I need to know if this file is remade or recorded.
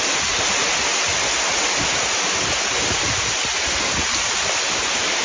recorded